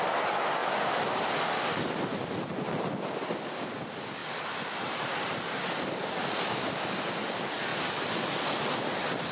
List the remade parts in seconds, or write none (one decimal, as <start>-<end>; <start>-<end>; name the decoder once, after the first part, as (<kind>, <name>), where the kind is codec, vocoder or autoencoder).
0.6-1.3 (vocoder, BigVGAN v2); 4.2-7.1; 7.7-9.3